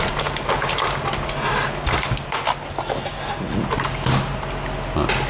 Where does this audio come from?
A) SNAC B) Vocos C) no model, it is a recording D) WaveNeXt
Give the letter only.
C